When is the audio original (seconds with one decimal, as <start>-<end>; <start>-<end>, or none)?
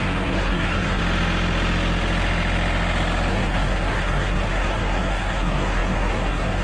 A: 1.0-3.3